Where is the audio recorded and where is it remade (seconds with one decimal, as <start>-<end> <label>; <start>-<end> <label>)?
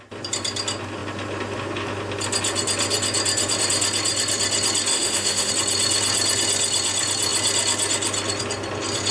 0.0-4.9 recorded; 4.9-5.5 remade; 5.5-9.1 recorded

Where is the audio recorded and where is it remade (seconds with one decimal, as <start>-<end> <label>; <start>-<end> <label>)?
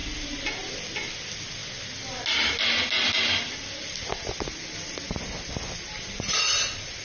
0.0-7.0 recorded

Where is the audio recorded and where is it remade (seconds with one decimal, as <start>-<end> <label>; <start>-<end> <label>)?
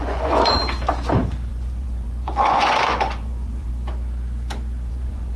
0.0-0.6 remade; 0.6-1.5 recorded; 1.5-3.7 remade; 3.7-4.9 recorded; 4.9-5.4 remade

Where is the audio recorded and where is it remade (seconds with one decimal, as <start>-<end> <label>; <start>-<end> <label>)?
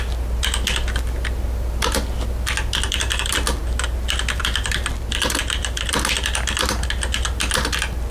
0.0-8.1 recorded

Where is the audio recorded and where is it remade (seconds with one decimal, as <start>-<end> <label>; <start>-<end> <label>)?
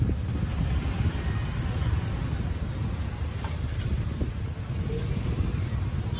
0.0-6.2 recorded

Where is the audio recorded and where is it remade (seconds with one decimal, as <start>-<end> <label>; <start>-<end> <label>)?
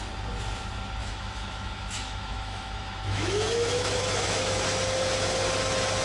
0.0-1.0 recorded; 1.0-4.6 remade; 4.6-6.0 recorded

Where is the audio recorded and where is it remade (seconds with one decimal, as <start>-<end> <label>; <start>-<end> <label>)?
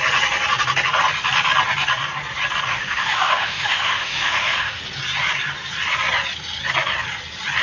0.0-2.7 recorded; 2.7-4.8 remade; 4.8-7.6 recorded